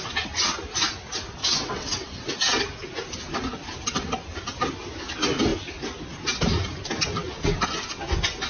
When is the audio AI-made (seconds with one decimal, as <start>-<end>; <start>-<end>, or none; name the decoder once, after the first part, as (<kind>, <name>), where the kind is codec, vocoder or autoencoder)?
1.4-2.2 (vocoder, WaveNeXt)